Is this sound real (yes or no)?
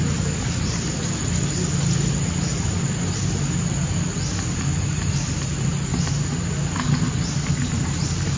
yes